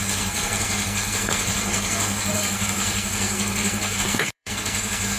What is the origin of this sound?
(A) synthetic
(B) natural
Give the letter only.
A